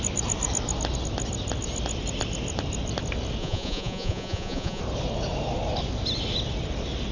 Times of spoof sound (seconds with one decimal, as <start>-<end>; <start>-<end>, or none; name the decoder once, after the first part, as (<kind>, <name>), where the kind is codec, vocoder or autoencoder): 3.4-4.8 (vocoder, Vocos)